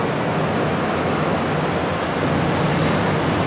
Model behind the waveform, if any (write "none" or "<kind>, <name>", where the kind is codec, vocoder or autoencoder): none